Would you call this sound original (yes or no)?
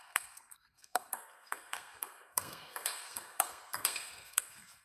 no